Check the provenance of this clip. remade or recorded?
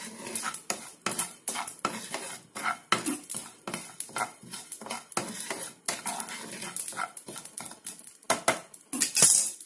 recorded